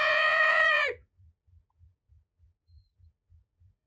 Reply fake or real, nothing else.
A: fake